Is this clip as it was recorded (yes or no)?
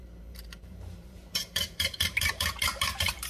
no